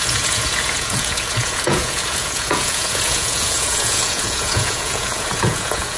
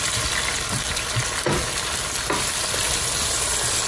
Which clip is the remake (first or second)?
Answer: first